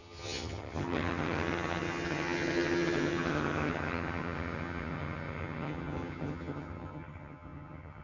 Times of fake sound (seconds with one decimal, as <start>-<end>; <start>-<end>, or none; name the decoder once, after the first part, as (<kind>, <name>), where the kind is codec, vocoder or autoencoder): 0.0-8.0 (vocoder, HiFi-GAN)